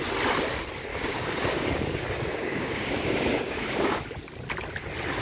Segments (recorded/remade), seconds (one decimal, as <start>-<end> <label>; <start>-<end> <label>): 0.0-0.9 recorded; 0.9-4.0 remade; 4.0-5.2 recorded